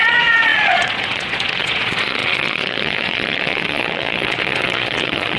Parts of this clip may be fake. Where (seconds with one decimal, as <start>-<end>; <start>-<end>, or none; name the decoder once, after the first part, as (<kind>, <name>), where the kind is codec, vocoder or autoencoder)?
0.0-5.4 (vocoder, Vocos)